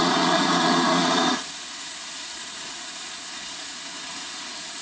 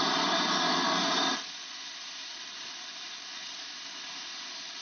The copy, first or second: first